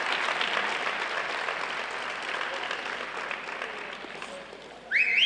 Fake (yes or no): no